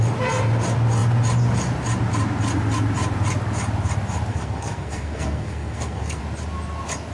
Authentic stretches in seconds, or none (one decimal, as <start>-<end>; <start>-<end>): 0.0-4.3; 6.2-7.1